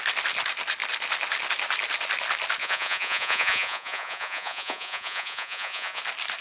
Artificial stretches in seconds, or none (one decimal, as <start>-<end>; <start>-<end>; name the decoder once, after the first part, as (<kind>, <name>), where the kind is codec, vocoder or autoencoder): 2.6-6.0 (vocoder, Vocos)